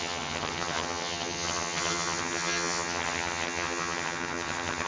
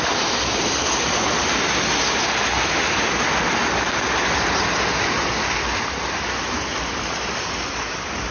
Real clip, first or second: second